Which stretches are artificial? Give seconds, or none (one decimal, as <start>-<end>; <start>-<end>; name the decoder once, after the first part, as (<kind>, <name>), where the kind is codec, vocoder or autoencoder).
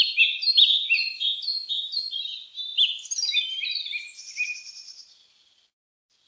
0.0-2.7 (vocoder, BigVGAN v2); 3.4-6.3